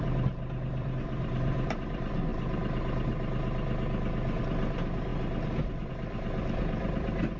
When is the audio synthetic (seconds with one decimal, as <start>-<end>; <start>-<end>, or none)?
0.0-2.3; 4.4-5.1; 5.9-7.4